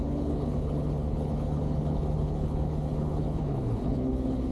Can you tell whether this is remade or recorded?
remade